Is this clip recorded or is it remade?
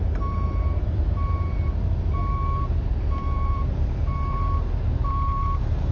remade